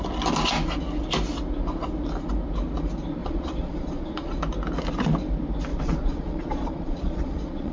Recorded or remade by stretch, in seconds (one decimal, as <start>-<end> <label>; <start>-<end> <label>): 0.0-3.2 recorded; 3.2-4.4 remade; 4.4-5.7 recorded; 5.7-7.7 remade